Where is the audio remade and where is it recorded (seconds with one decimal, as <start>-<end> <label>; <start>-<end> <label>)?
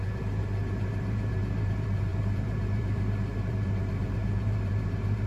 0.0-5.3 remade